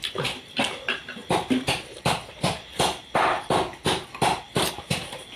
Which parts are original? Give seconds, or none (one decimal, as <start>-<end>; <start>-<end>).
0.0-5.4